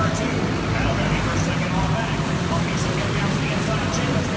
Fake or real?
real